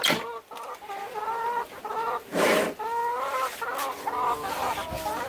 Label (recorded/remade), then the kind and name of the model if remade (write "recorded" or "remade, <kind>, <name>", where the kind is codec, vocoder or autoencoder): recorded